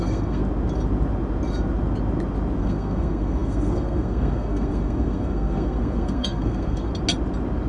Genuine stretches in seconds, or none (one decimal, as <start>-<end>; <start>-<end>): 0.4-2.6; 6.9-7.7